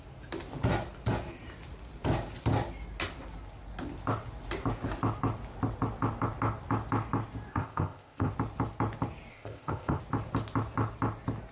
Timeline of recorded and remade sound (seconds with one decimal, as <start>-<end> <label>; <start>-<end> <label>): 0.0-7.5 recorded; 7.5-8.3 remade; 8.3-9.3 recorded; 9.3-10.0 remade; 10.0-11.5 recorded